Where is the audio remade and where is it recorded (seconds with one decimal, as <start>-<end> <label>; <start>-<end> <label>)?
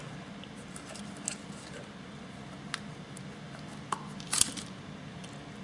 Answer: 0.0-5.6 recorded